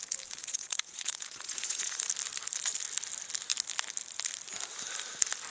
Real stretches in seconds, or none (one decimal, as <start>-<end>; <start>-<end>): 0.0-0.4; 2.1-5.5